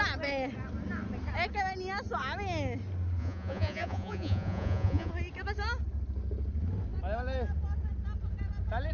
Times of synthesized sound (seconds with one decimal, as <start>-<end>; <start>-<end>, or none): 3.2-5.1